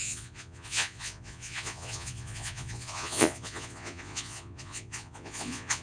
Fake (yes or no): yes